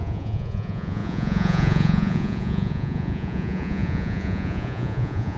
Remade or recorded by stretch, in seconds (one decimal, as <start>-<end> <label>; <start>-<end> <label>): 0.0-5.4 remade